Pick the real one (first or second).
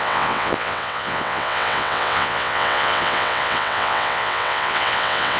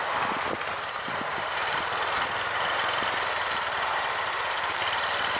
second